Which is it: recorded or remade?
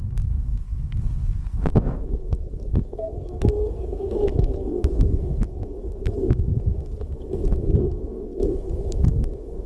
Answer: remade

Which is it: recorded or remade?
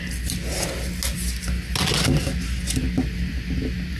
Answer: recorded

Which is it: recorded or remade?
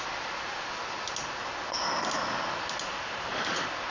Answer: recorded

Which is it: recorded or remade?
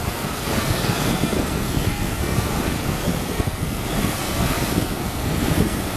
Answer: remade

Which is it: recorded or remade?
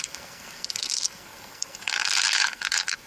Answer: remade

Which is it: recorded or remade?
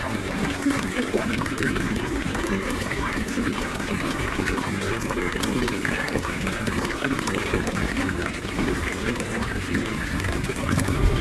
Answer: remade